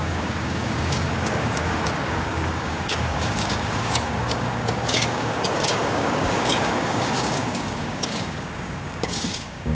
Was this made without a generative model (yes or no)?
no